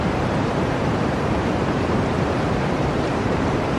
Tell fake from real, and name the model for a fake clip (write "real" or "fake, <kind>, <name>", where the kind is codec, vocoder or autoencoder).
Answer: fake, vocoder, BigVGAN v2